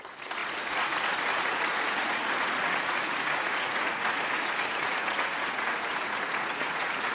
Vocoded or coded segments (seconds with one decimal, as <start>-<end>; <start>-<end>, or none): 0.0-7.1